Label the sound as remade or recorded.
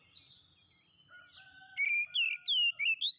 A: recorded